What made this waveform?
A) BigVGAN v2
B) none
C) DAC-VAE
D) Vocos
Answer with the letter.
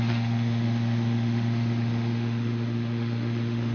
C